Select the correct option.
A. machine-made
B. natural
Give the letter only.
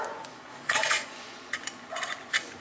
A